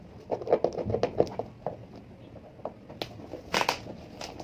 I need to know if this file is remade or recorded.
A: recorded